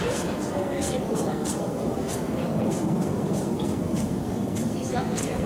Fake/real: fake